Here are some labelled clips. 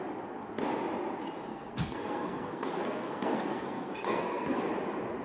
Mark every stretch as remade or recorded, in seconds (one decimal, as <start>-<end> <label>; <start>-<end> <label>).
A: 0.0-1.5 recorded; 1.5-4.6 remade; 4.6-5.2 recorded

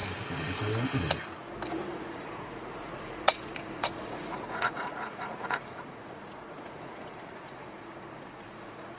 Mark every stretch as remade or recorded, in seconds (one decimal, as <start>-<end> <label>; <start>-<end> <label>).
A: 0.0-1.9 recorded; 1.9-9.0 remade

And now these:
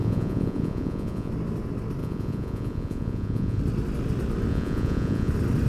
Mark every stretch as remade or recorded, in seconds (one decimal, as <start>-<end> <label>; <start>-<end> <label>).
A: 0.0-1.3 remade; 1.3-2.0 recorded; 2.0-3.6 remade; 3.6-4.5 recorded; 4.5-5.3 remade; 5.3-5.7 recorded

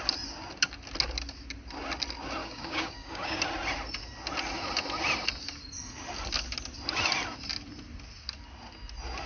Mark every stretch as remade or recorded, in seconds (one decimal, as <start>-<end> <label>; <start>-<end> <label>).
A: 0.0-2.4 recorded; 2.4-3.4 remade; 3.4-9.3 recorded

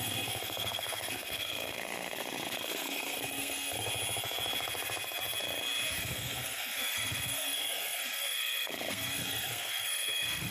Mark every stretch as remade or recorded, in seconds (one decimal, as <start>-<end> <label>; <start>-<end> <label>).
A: 0.0-3.9 remade; 3.9-6.0 recorded; 6.0-10.5 remade